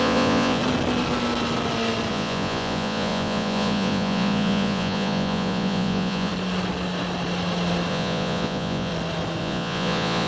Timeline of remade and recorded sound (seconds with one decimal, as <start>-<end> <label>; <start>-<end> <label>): 0.0-0.6 remade; 0.6-2.1 recorded; 2.1-6.3 remade; 6.3-7.9 recorded; 7.9-8.9 remade; 8.9-9.4 recorded; 9.4-10.3 remade